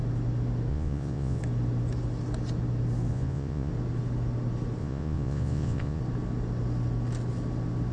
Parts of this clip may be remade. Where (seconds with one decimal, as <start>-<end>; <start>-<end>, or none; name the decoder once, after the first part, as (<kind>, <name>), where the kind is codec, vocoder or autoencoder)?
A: 0.7-1.4 (vocoder, Vocos); 3.1-3.7; 4.8-6.0